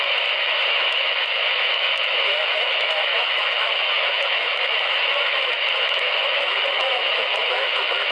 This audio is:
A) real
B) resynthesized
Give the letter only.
B